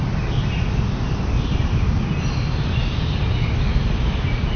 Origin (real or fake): real